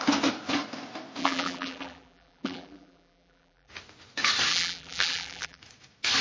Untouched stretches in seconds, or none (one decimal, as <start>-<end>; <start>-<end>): 0.0-1.2; 3.7-4.5; 5.6-6.2